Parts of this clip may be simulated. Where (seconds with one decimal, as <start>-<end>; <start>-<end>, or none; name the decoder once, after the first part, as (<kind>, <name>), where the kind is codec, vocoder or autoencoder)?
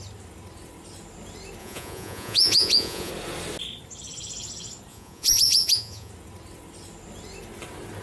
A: 1.6-3.1 (vocoder, Vocos); 4.9-6.1